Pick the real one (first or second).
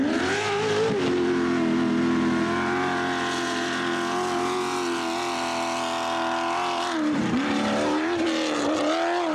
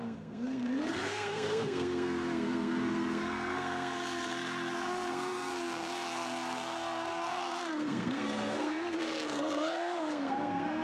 first